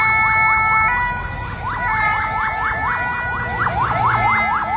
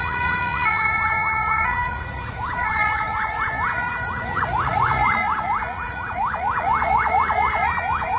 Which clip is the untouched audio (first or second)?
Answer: first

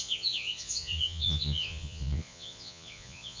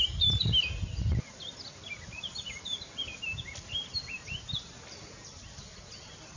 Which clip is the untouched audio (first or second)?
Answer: second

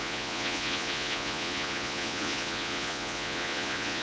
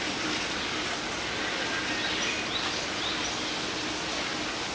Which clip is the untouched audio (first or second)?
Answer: second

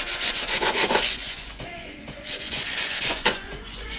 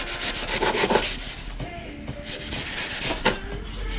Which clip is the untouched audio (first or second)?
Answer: second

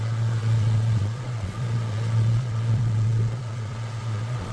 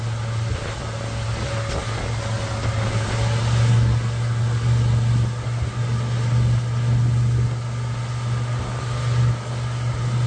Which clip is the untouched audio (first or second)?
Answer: second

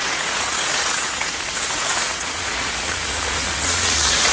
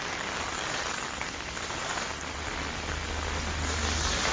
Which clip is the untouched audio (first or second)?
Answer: second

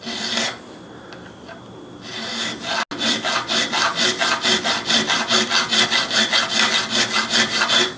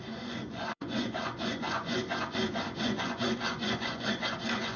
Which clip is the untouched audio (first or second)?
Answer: first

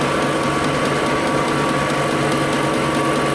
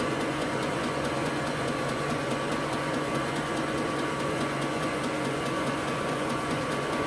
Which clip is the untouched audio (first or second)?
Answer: first